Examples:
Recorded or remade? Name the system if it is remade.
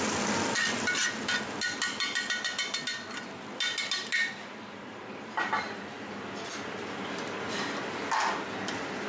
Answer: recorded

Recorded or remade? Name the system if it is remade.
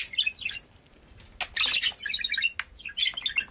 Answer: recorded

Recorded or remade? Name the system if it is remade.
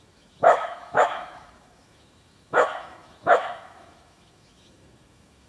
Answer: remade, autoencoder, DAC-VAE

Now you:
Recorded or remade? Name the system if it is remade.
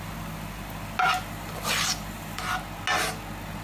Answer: recorded